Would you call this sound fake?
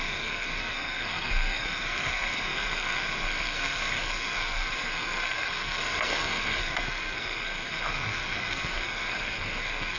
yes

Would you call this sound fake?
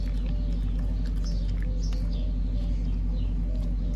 no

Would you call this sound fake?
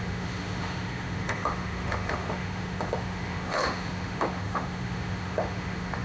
yes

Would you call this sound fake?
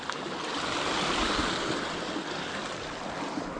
no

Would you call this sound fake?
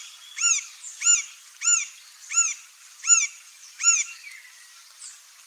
no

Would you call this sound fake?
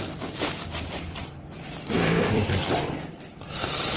no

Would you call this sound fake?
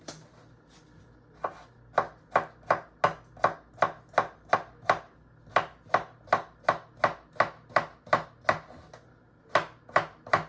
no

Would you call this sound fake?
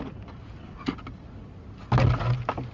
no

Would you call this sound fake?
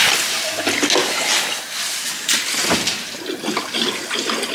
no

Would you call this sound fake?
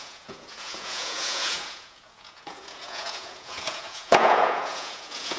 yes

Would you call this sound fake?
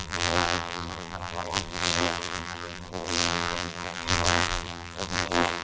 yes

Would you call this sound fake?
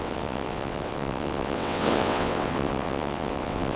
yes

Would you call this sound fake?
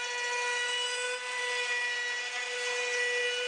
no